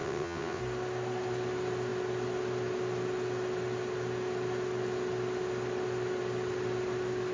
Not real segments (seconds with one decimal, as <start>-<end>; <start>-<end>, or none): 0.0-0.6